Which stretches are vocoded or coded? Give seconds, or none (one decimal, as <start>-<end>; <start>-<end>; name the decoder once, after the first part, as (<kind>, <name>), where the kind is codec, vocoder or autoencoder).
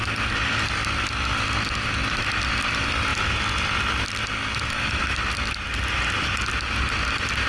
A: none